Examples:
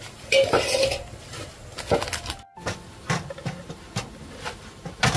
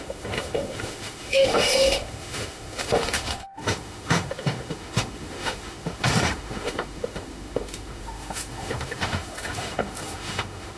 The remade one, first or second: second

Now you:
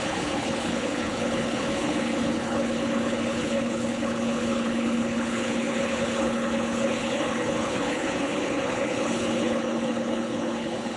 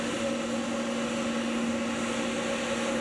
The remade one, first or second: first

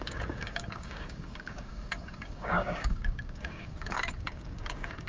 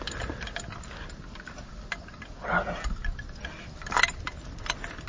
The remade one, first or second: first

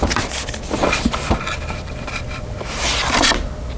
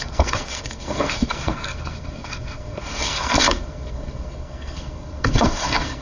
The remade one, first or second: second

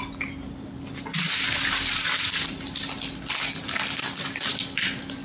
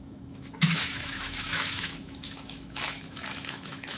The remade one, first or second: second